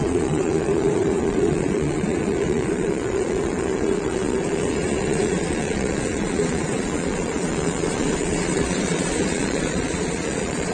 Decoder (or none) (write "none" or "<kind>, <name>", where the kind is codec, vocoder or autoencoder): vocoder, Vocos